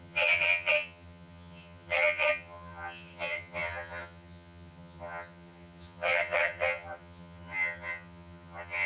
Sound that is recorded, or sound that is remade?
remade